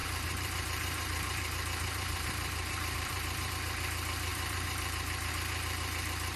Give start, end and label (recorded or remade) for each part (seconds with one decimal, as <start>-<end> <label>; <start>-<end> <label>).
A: 0.0-3.5 remade; 3.5-4.3 recorded; 4.3-5.3 remade; 5.3-6.4 recorded